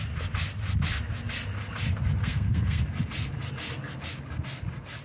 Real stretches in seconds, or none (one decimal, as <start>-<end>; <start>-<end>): 0.0-2.2; 2.8-5.0